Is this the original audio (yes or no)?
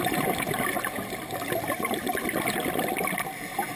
yes